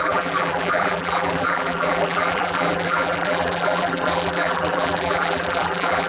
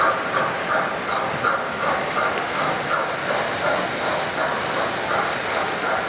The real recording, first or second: second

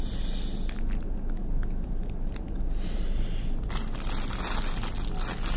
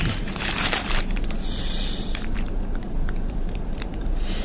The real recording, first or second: first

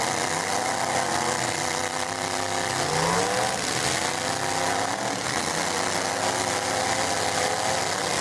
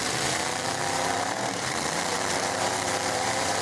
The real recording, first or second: first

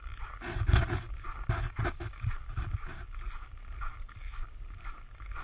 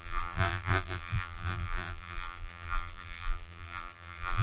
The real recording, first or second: first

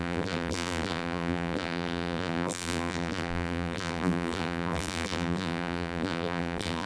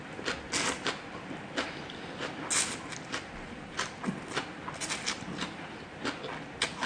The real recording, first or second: second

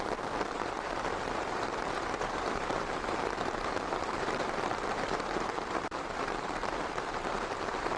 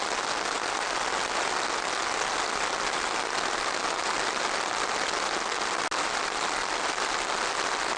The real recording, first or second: second